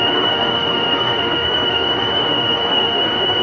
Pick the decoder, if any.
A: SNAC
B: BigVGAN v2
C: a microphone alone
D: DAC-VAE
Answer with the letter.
D